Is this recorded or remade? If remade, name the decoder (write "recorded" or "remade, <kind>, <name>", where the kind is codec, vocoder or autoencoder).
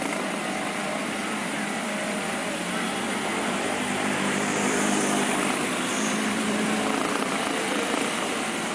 remade, vocoder, BigVGAN v2